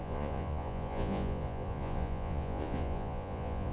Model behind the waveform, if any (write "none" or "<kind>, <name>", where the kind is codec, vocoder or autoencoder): vocoder, Vocos